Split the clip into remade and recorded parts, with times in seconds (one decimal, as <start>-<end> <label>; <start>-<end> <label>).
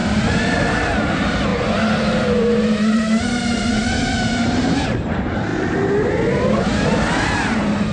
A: 0.0-5.5 remade; 5.5-6.6 recorded; 6.6-7.9 remade